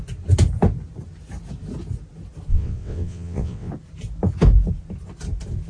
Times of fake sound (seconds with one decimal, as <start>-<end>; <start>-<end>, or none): 2.5-3.7